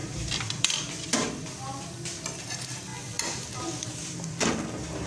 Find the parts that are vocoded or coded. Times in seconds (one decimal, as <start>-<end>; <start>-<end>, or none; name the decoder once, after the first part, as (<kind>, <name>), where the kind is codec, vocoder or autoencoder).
0.0-2.0 (vocoder, BigVGAN v2); 2.9-4.5